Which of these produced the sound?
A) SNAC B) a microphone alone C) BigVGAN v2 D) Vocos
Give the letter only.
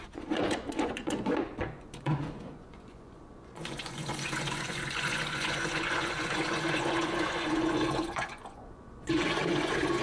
D